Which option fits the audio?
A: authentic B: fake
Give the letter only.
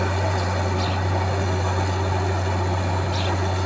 A